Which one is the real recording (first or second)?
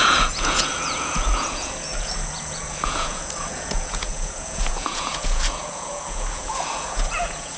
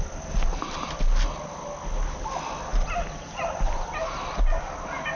second